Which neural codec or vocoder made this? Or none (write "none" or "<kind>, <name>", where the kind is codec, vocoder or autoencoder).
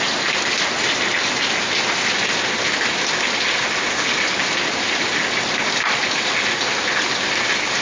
none